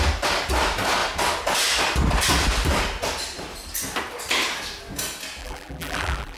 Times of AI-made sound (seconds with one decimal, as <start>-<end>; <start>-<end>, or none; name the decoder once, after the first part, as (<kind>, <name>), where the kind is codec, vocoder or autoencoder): 5.4-6.4 (vocoder, BigVGAN v2)